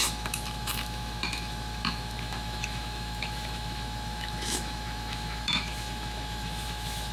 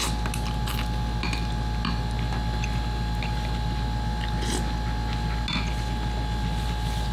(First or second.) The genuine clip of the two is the second